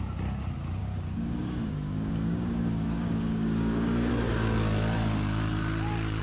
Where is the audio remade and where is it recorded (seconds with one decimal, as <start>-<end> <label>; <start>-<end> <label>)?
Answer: 0.0-0.8 recorded; 0.8-4.1 remade; 4.1-6.2 recorded